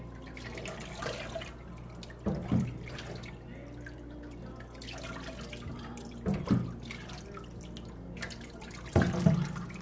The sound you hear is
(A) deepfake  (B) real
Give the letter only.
B